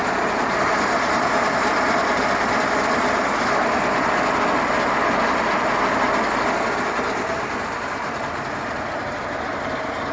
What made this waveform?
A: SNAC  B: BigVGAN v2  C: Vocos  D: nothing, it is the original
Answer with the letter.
D